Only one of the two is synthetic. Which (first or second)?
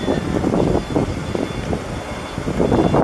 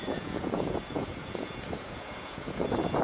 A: second